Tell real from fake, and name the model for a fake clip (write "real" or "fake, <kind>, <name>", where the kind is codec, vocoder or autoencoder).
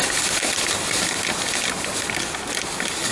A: real